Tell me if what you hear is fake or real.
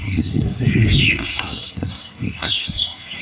fake